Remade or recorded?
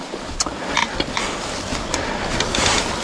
recorded